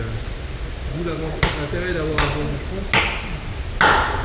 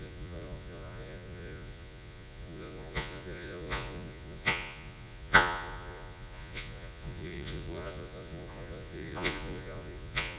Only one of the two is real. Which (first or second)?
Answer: first